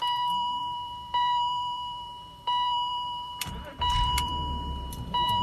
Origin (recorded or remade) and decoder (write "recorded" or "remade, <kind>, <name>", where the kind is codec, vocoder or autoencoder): remade, vocoder, BigVGAN v2